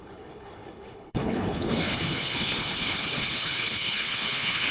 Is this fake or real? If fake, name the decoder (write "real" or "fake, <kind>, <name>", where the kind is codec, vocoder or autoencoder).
fake, codec, HILCodec